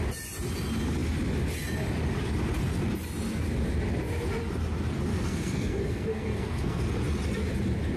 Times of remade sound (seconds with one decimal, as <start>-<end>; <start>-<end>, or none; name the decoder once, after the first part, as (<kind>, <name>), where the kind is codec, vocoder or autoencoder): 5.1-6.9 (codec, SNAC)